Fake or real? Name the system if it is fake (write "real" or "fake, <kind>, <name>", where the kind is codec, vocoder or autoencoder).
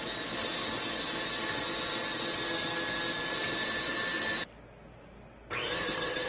real